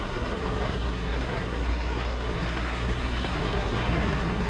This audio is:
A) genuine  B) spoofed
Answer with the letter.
B